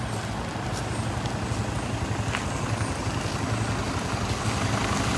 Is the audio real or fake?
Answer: real